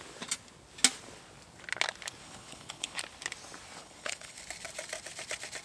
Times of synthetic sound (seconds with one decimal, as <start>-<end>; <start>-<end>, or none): 2.2-3.0; 3.8-4.4